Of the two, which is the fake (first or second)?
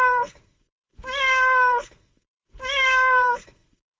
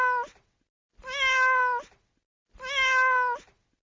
first